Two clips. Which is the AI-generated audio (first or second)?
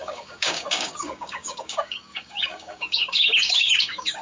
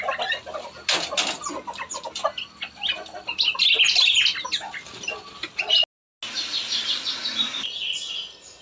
first